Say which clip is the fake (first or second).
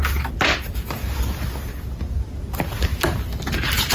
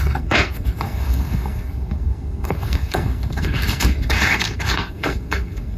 second